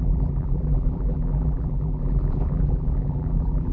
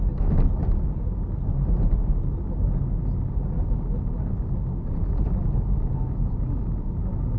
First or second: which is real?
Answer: second